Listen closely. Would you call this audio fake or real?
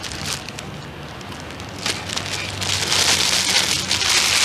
real